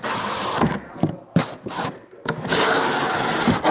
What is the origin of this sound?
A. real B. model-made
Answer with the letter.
A